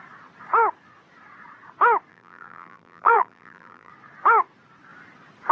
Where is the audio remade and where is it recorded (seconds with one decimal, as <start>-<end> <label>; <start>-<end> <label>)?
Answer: 0.0-2.1 recorded; 2.1-3.9 remade; 3.9-5.5 recorded